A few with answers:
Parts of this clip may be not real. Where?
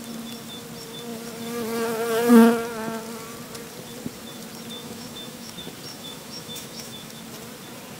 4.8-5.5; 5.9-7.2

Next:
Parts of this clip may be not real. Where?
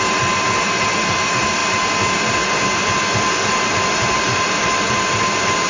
none